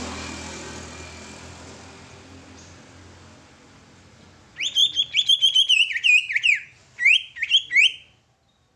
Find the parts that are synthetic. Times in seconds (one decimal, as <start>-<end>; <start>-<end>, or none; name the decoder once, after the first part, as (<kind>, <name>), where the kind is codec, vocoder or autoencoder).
none